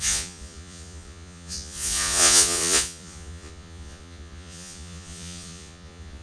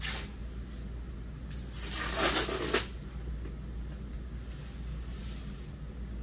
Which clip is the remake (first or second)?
first